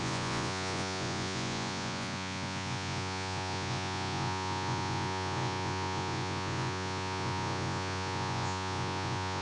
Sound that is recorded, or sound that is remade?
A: remade